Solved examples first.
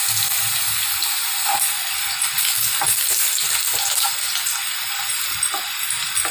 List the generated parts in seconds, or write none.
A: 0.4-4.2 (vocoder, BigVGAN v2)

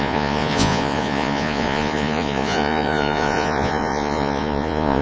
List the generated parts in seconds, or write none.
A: 0.0-5.0 (vocoder, Vocos)

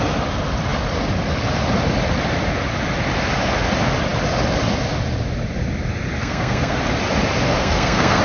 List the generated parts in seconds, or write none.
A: 6.2-6.8 (codec, SNAC); 7.6-8.2

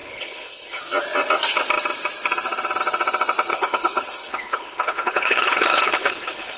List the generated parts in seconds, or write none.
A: 0.0-0.8 (codec, HILCodec); 3.5-6.6